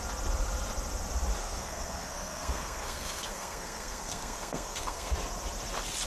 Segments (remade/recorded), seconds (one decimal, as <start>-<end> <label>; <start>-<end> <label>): 0.0-1.4 recorded; 1.4-5.1 remade; 5.1-6.1 recorded